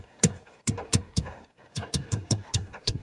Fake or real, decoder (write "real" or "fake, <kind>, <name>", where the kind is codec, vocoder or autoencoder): fake, codec, SNAC